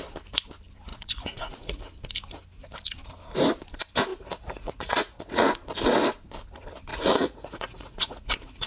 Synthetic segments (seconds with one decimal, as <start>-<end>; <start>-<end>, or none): 0.9-1.8; 4.1-5.5; 6.9-8.7